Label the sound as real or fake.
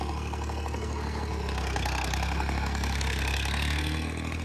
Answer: fake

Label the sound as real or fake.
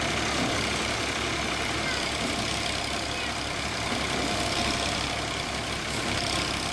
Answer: real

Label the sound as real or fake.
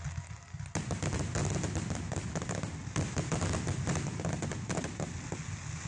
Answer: real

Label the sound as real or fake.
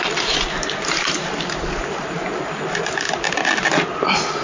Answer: real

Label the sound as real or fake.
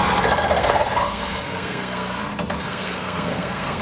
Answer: fake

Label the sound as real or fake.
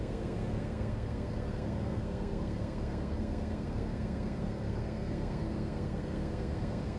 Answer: fake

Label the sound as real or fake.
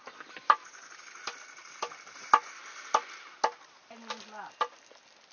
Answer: real